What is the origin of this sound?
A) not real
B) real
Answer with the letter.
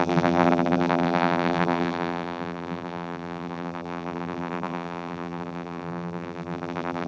A